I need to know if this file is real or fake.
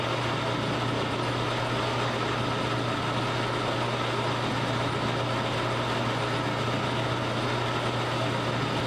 real